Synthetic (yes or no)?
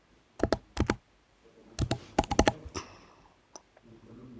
no